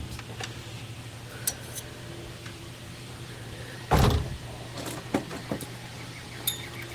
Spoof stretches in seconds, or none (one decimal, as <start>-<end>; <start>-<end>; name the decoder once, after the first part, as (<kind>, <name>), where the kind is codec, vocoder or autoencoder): 2.5-4.4 (vocoder, BigVGAN v2)